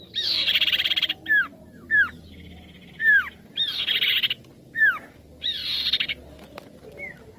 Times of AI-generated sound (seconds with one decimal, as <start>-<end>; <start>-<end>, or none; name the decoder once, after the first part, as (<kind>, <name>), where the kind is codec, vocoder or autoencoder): none